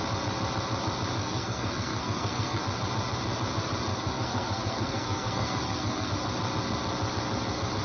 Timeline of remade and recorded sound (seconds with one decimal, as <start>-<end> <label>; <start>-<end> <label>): 0.0-1.2 recorded; 1.2-2.6 remade; 2.6-3.9 recorded; 3.9-6.1 remade; 6.1-7.8 recorded

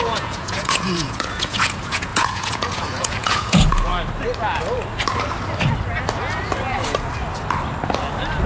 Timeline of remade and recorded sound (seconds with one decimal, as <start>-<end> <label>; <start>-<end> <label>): 0.0-3.9 remade; 3.9-8.5 recorded

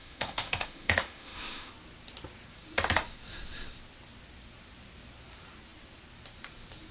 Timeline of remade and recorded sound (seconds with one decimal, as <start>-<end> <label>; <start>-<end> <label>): 0.0-1.7 remade; 1.7-6.9 recorded

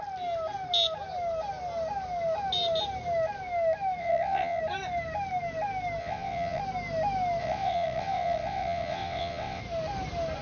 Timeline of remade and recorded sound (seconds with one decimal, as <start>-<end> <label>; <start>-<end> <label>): 0.0-4.0 recorded; 4.0-4.6 remade; 4.6-6.0 recorded; 6.0-6.6 remade; 6.6-7.4 recorded; 7.4-9.6 remade; 9.6-10.4 recorded

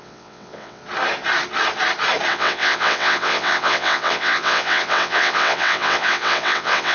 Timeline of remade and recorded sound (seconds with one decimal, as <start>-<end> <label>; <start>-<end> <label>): 0.0-0.8 remade; 0.8-2.3 recorded; 2.3-6.9 remade

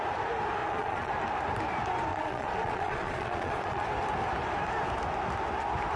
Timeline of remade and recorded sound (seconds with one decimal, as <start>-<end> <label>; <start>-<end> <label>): 0.0-0.6 recorded; 0.6-1.1 remade; 1.1-2.1 recorded; 2.1-3.9 remade; 3.9-6.0 recorded

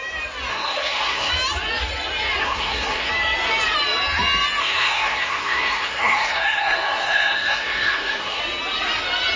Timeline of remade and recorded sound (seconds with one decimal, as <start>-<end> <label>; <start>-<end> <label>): 0.0-0.5 recorded; 0.5-1.3 remade; 1.3-2.4 recorded; 2.4-3.1 remade; 3.1-4.6 recorded; 4.6-8.4 remade; 8.4-9.4 recorded

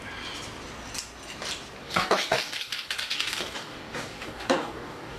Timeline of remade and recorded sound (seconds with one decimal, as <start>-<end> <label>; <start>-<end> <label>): 0.0-1.8 recorded; 1.8-5.2 remade